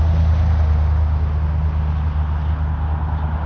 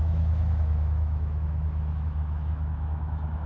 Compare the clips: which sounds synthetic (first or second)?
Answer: second